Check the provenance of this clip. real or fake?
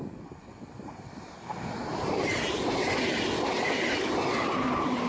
real